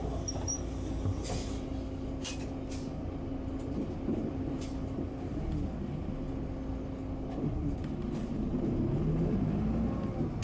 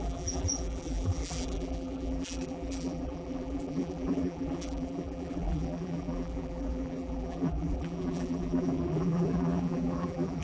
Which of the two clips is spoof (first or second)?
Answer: second